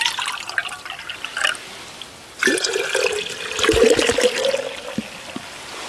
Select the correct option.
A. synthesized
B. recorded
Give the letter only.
B